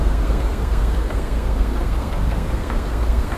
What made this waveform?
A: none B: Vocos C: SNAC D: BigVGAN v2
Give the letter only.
C